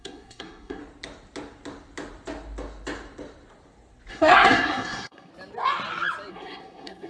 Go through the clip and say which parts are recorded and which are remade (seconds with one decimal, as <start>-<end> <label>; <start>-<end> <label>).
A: 0.0-0.8 remade; 0.8-4.1 recorded; 4.1-5.3 remade; 5.3-6.3 recorded; 6.3-7.1 remade